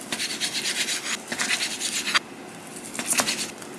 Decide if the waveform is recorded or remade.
recorded